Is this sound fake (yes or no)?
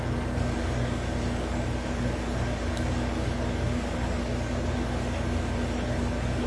yes